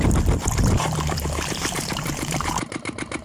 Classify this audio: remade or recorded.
remade